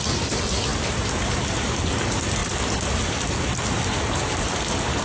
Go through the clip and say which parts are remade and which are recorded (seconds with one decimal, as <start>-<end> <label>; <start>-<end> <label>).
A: 0.0-5.0 recorded